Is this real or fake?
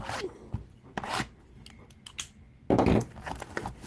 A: real